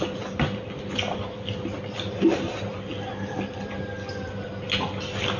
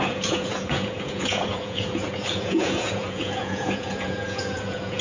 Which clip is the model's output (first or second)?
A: second